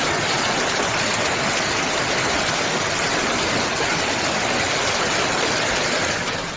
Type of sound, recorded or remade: recorded